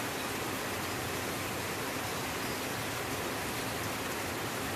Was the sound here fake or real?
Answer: real